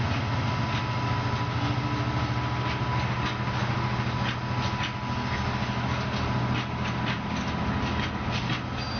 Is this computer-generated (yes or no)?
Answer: no